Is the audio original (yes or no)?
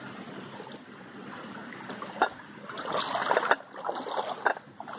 yes